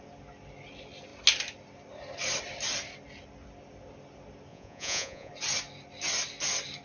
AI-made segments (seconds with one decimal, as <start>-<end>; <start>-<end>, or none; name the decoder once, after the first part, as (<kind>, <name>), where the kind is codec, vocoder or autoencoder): 4.5-5.3 (vocoder, Vocos)